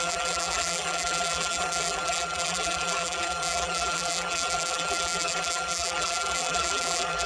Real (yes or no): no